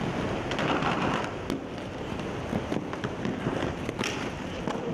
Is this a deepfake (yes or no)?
no